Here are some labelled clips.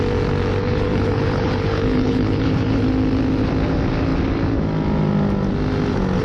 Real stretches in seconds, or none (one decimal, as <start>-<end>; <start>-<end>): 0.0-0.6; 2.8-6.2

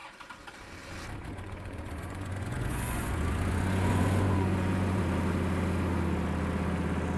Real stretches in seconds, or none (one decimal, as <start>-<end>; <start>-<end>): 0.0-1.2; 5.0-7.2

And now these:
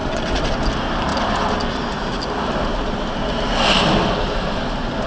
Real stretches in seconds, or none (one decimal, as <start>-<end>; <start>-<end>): 0.5-5.1